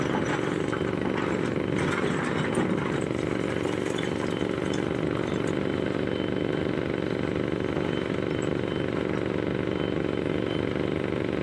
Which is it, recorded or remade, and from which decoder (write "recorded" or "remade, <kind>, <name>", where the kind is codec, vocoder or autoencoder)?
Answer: recorded